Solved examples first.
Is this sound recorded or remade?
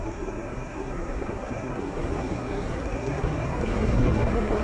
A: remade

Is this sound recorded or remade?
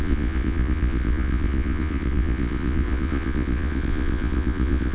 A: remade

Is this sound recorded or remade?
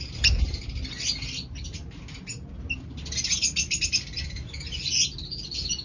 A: recorded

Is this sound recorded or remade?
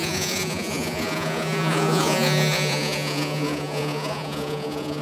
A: remade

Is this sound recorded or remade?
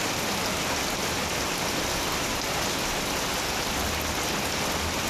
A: recorded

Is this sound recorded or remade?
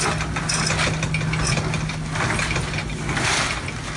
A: recorded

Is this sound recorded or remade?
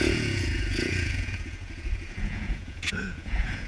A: remade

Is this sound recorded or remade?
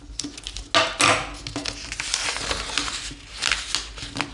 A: recorded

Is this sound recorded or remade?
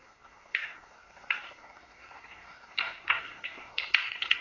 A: remade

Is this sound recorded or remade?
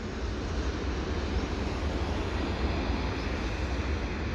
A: recorded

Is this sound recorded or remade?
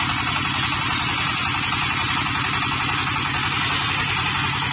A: recorded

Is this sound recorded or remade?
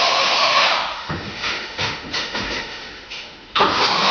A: remade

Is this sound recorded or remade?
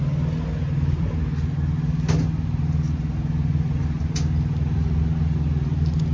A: recorded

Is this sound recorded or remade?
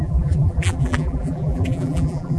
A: remade